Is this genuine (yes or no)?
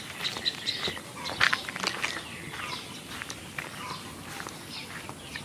yes